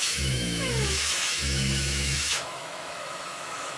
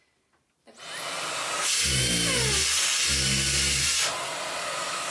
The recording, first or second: second